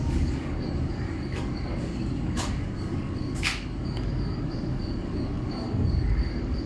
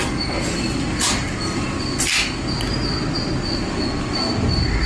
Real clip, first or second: second